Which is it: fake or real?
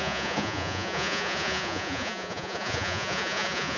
fake